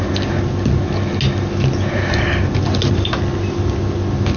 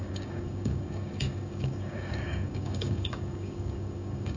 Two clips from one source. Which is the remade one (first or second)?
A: second